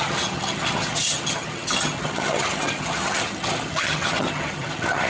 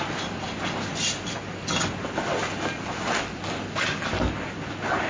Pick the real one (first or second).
second